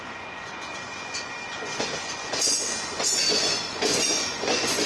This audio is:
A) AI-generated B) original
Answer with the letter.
A